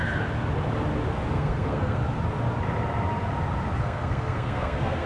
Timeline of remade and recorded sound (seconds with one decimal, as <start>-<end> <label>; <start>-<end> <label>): 0.0-1.3 recorded; 1.3-2.0 remade; 2.0-3.8 recorded; 3.8-5.1 remade